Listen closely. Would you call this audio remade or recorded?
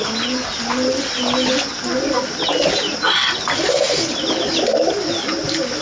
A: recorded